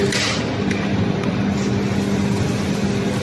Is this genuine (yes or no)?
yes